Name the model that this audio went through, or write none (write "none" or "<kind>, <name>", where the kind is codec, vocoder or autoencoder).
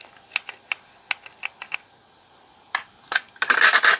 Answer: none